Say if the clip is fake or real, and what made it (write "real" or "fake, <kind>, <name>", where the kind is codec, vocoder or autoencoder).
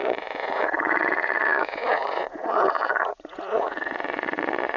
fake, vocoder, Vocos